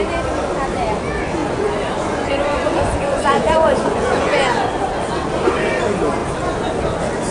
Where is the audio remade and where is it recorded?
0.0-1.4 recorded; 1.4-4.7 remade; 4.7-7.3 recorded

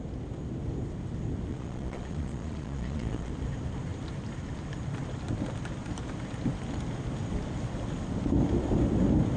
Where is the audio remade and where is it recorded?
0.0-1.5 recorded; 1.5-3.3 remade; 3.3-9.4 recorded

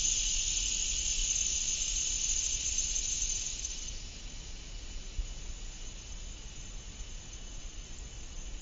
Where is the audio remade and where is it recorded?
0.0-3.1 recorded; 3.1-7.6 remade; 7.6-8.6 recorded